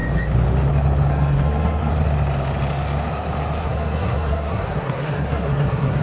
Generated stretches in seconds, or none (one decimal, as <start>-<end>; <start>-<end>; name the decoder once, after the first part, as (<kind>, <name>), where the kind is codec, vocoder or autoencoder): 1.1-1.9 (codec, SNAC); 3.6-6.0